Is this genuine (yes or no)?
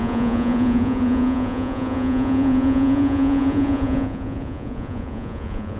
no